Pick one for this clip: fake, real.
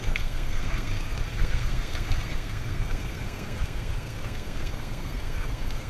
fake